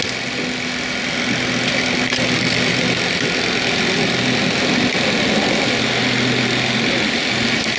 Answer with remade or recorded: recorded